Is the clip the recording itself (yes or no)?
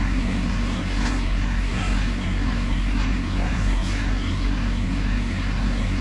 no